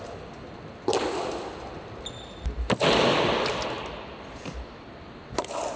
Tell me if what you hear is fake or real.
real